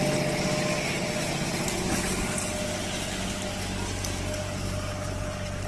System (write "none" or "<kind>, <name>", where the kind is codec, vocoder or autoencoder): none